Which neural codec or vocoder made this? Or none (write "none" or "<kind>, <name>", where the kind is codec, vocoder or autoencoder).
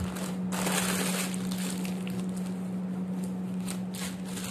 none